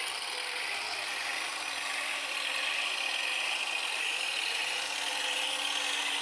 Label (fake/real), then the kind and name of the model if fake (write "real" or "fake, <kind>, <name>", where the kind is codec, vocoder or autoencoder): real